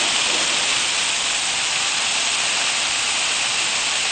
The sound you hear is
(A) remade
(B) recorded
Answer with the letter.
B